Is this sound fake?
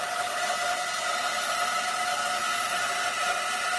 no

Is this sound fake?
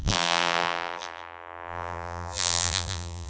yes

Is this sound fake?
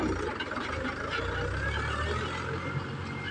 no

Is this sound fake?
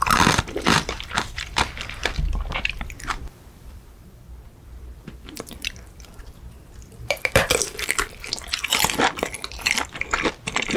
yes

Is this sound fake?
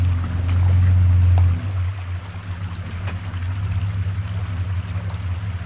no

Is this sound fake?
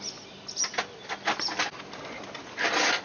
no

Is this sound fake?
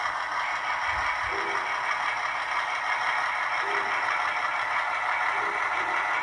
no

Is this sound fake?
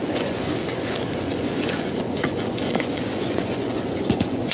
yes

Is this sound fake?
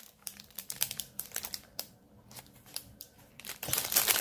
yes